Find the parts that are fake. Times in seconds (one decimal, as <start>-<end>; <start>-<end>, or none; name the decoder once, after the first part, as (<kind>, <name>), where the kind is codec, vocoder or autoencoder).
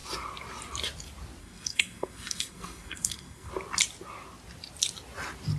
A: 1.4-3.5 (codec, SNAC)